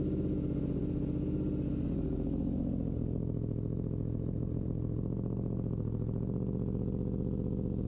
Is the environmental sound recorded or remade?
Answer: recorded